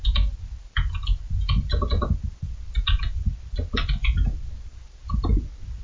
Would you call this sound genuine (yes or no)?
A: yes